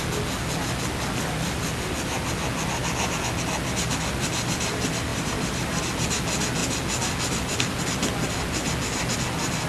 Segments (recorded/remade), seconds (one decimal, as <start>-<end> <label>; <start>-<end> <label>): 0.0-5.1 recorded; 5.1-5.8 remade; 5.8-9.7 recorded